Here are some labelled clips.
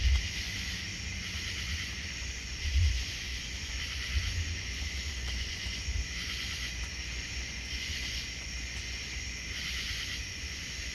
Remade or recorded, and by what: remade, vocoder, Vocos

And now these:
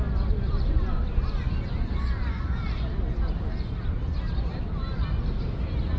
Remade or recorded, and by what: recorded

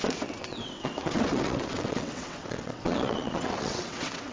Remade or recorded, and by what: remade, vocoder, WaveNeXt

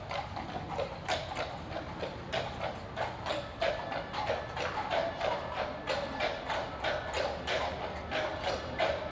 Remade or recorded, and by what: recorded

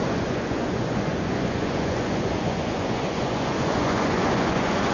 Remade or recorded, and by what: remade, vocoder, Vocos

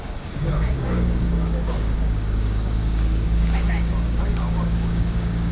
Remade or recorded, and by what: remade, codec, DAC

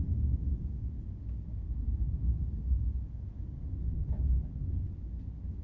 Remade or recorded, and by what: recorded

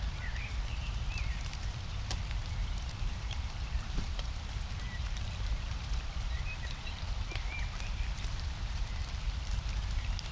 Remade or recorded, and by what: remade, vocoder, BigVGAN v2